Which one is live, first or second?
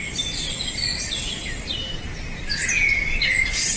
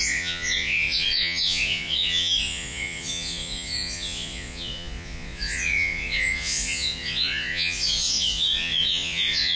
first